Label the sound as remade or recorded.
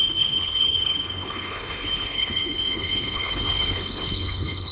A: remade